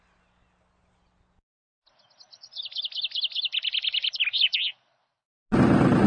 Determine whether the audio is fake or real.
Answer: real